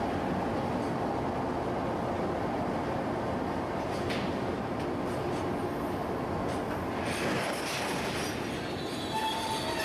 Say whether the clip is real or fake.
real